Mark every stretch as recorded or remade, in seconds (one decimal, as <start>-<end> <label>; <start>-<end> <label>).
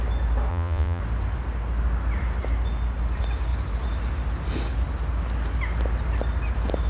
0.0-0.5 recorded; 0.5-1.0 remade; 1.0-6.9 recorded